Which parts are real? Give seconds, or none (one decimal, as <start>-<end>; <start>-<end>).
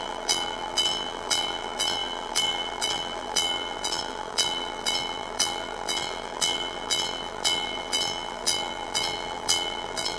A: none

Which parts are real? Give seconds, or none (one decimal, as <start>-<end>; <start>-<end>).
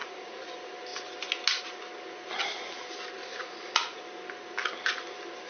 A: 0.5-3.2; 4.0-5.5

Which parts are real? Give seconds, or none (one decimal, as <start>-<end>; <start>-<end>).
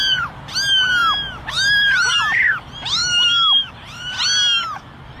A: 0.0-3.0; 3.7-5.2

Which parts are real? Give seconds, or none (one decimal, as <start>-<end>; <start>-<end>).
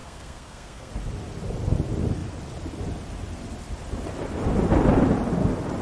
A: 0.9-5.8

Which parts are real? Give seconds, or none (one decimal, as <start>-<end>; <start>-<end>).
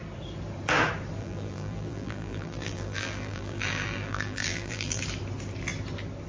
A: 0.0-1.2; 5.0-6.3